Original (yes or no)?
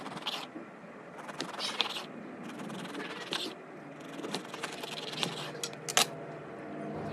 yes